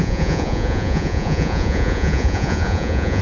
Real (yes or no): no